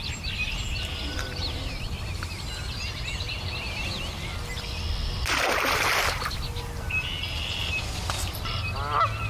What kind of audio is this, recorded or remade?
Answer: recorded